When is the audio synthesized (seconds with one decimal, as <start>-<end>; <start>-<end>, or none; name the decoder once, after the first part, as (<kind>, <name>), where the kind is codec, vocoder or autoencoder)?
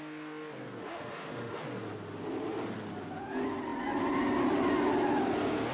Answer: 0.8-1.6 (autoencoder, DAC-VAE)